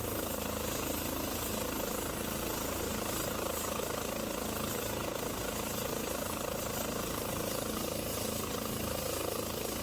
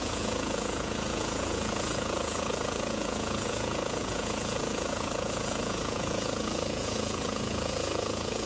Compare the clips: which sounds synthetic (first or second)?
second